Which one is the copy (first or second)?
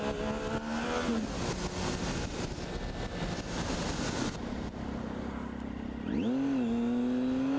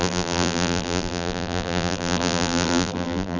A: second